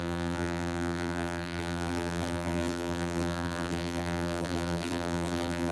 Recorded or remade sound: remade